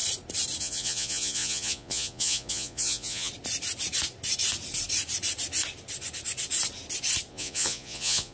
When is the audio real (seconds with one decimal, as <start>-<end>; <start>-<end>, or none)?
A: 0.0-0.6; 3.3-7.3